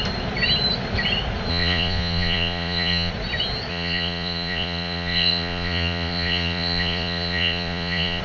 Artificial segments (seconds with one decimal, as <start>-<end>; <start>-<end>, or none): 1.5-3.1; 3.7-8.2